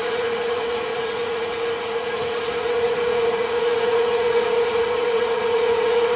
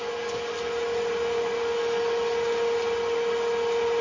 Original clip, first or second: second